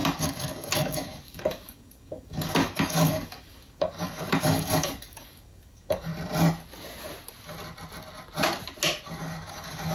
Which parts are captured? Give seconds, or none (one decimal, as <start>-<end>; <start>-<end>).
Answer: 6.1-9.2